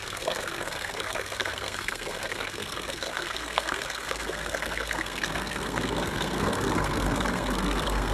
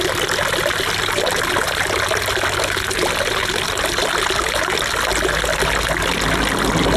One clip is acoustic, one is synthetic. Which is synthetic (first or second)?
first